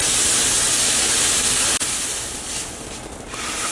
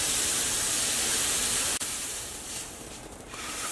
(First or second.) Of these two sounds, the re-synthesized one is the second